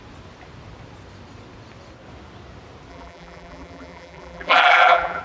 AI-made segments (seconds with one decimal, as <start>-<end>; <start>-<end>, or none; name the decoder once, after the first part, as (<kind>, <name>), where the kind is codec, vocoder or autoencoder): 2.9-5.2 (vocoder, BigVGAN v2)